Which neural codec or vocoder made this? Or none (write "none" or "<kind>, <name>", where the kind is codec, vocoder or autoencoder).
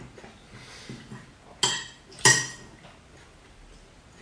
none